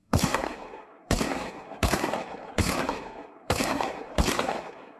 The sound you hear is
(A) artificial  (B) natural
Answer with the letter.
A